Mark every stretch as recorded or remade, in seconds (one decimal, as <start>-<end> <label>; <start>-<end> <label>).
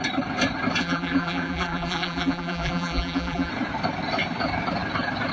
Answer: 0.0-0.8 recorded; 0.8-3.5 remade; 3.5-5.3 recorded